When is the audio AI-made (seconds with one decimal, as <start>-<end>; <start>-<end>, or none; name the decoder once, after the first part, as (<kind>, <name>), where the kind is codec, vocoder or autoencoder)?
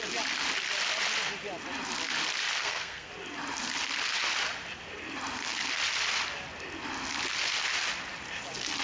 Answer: 2.6-3.1 (codec, SNAC)